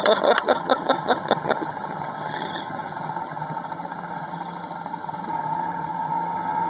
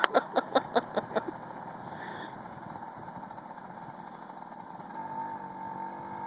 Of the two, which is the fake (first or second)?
first